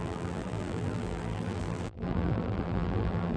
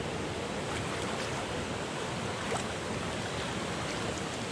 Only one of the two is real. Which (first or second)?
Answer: second